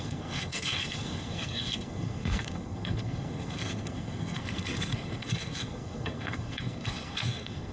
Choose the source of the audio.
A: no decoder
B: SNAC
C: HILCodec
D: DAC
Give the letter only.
B